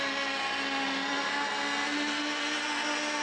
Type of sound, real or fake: real